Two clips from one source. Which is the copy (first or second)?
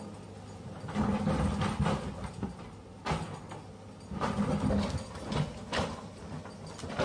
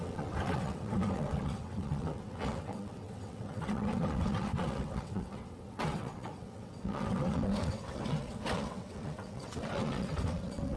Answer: second